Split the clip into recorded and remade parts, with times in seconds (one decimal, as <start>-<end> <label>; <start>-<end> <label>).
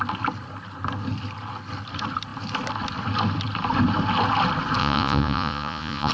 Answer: 0.0-4.8 recorded; 4.8-6.1 remade